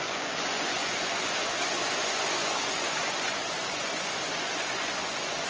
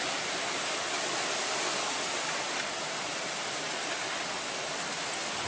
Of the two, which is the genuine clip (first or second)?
second